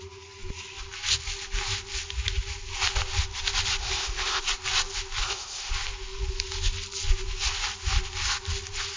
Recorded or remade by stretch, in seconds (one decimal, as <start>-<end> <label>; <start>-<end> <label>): 0.0-3.8 recorded; 3.8-4.4 remade; 4.4-5.2 recorded; 5.2-5.7 remade; 5.7-9.0 recorded